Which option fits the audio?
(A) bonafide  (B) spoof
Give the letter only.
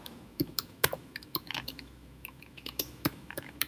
B